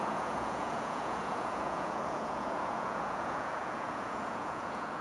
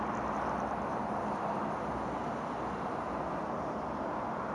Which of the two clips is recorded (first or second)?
second